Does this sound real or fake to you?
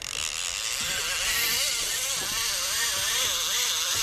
fake